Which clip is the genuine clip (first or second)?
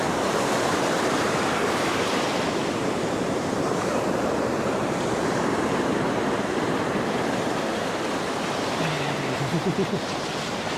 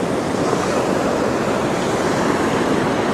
second